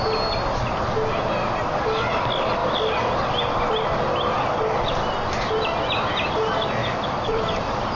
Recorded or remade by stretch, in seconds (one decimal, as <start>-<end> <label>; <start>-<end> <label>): 0.0-6.8 recorded; 6.8-7.9 remade